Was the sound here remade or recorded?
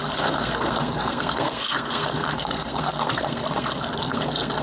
remade